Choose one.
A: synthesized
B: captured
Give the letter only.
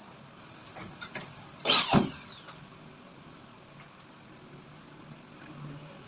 B